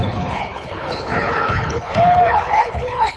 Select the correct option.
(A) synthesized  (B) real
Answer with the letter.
A